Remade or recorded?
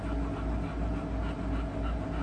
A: recorded